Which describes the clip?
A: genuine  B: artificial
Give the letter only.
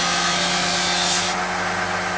A